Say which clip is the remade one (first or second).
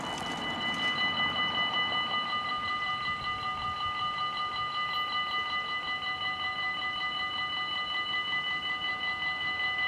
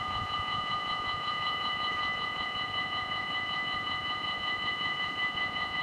second